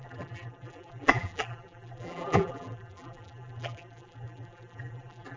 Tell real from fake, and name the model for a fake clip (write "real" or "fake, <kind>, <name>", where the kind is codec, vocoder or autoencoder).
fake, vocoder, BigVGAN v2